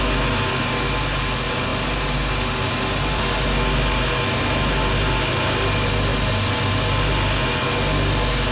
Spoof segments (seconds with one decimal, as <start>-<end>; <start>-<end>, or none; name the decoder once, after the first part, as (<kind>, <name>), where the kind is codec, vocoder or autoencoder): none